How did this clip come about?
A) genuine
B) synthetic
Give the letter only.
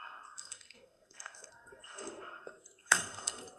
B